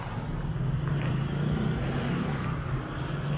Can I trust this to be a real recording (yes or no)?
yes